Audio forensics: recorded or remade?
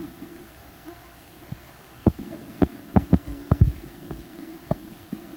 remade